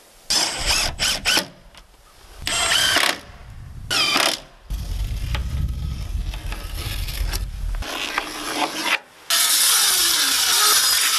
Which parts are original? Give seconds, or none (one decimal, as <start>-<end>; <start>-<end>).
0.0-11.2